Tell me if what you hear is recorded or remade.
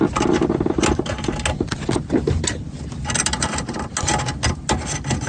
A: recorded